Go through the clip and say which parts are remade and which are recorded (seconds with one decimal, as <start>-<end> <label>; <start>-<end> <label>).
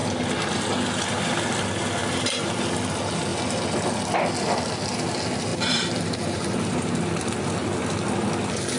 0.0-2.0 recorded; 2.0-2.6 remade; 2.6-5.5 recorded; 5.5-7.0 remade; 7.0-8.8 recorded